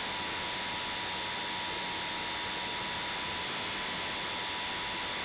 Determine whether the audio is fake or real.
real